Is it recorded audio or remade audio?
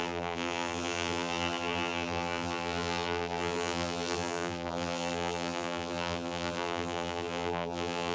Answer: remade